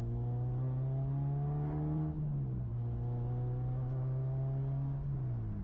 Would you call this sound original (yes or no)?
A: yes